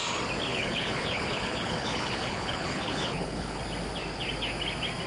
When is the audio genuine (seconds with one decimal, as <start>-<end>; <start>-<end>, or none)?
0.0-0.5; 3.6-5.1